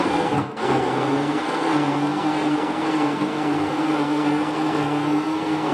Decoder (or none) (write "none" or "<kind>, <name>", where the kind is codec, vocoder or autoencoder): codec, SNAC